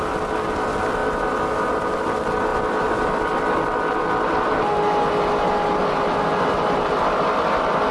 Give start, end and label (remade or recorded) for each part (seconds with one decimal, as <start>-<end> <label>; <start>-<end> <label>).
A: 0.0-7.9 recorded